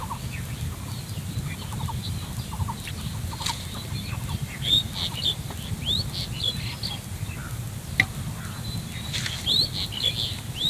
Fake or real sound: real